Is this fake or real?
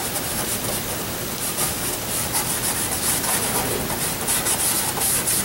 real